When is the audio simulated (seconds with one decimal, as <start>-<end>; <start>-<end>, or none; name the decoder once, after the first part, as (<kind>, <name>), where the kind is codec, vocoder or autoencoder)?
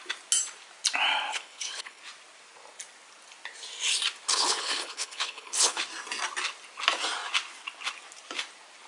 1.3-2.0 (codec, HILCodec); 4.3-5.8